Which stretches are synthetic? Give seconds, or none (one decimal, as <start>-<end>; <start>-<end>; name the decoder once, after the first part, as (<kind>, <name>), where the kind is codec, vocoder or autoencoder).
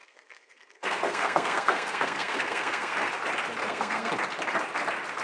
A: 0.0-3.1 (codec, SNAC); 3.6-4.1